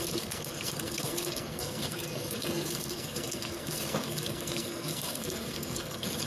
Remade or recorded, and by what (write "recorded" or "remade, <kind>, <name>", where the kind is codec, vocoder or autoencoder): remade, codec, SNAC